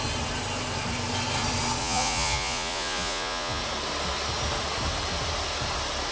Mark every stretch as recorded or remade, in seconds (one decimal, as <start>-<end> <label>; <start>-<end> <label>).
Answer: 0.0-1.8 recorded; 1.8-3.6 remade; 3.6-6.1 recorded

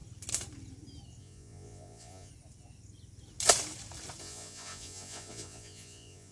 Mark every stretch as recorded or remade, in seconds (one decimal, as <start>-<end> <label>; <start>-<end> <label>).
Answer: 0.0-1.2 recorded; 1.2-2.3 remade; 2.3-4.2 recorded; 4.2-6.3 remade

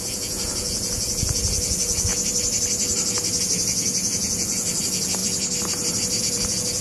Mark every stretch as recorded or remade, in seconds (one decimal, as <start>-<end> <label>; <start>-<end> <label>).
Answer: 0.0-2.1 remade; 2.1-3.4 recorded; 3.4-5.2 remade; 5.2-6.2 recorded; 6.2-6.8 remade

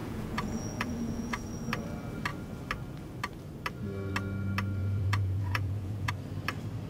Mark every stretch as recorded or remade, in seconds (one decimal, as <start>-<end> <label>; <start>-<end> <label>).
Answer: 0.0-1.4 remade; 1.4-4.8 recorded; 4.8-6.1 remade; 6.1-6.9 recorded

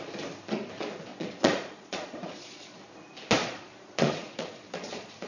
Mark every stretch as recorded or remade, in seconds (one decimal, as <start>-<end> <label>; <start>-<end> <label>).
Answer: 0.0-1.1 recorded; 1.1-2.8 remade; 2.8-3.4 recorded; 3.4-5.3 remade